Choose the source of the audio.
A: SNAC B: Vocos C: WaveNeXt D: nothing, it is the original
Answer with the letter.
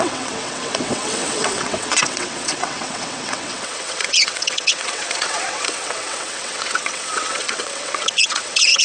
C